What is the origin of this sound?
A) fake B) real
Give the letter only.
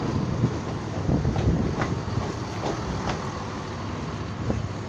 B